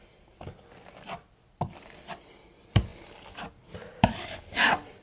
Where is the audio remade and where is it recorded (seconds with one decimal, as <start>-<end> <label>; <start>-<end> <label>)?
0.0-2.9 remade; 2.9-3.5 recorded; 3.5-5.0 remade